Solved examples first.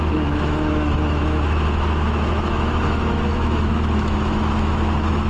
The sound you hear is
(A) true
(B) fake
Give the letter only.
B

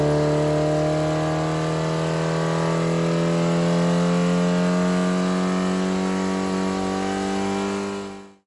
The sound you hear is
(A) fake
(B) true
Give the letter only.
B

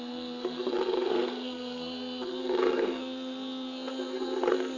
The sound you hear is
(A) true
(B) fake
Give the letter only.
B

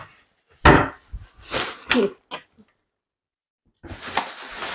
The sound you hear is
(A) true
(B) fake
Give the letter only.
A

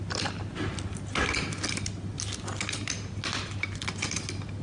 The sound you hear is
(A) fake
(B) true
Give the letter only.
B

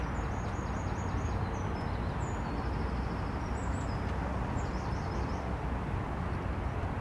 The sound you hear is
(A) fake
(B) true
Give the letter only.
B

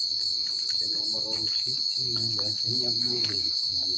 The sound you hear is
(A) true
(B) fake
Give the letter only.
B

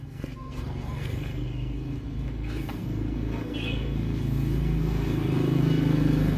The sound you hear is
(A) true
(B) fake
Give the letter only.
B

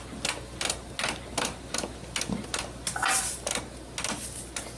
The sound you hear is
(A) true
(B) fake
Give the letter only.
A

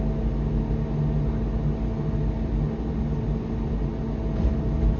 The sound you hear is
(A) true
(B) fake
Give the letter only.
A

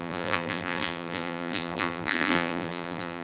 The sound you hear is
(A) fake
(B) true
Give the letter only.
A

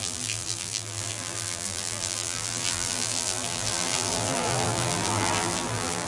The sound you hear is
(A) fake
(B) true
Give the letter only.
A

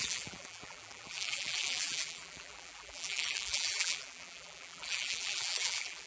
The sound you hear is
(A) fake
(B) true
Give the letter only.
A